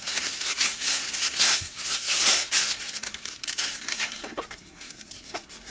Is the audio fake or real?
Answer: fake